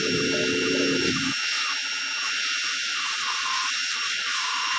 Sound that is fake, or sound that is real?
real